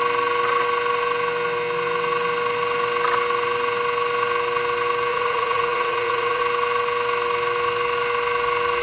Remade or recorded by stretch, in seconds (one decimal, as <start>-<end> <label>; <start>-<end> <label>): 0.0-5.1 recorded; 5.1-6.4 remade; 6.4-8.8 recorded